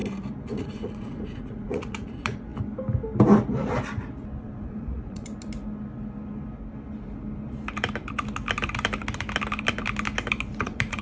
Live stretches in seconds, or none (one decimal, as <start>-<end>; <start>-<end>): 0.0-0.6; 2.5-4.4; 5.3-10.5